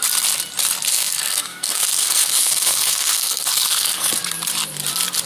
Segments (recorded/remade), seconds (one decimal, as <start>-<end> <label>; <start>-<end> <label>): 0.0-0.9 recorded; 0.9-4.1 remade; 4.1-5.3 recorded